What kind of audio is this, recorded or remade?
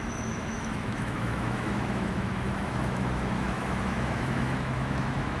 remade